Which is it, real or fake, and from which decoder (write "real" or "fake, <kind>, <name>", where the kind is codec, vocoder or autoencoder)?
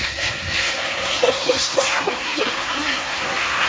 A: fake, codec, SNAC